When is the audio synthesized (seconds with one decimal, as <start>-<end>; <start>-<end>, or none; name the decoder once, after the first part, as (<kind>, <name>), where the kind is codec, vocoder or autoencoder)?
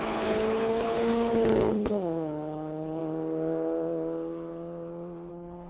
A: 0.0-3.0 (codec, HILCodec); 5.3-5.7